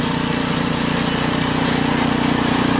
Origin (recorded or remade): recorded